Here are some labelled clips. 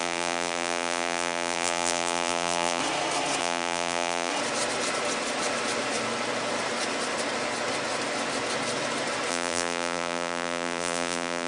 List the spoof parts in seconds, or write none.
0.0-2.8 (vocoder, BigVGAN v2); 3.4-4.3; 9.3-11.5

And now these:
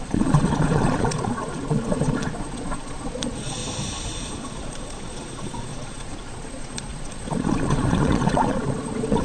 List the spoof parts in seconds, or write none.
0.0-3.6 (vocoder, Vocos); 4.3-9.2